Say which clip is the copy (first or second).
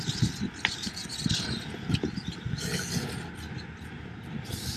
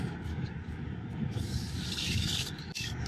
second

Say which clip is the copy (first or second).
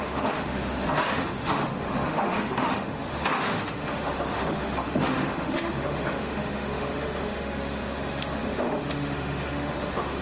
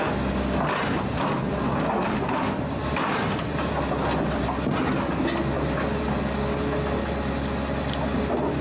first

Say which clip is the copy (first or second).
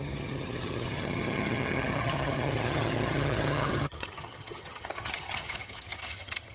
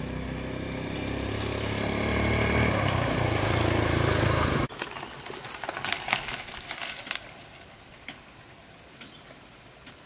first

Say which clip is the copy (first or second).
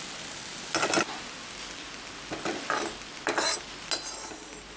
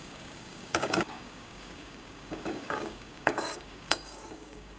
second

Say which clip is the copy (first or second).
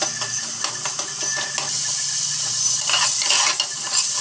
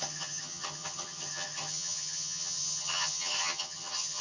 second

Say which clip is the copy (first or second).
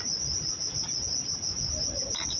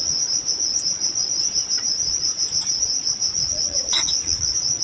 second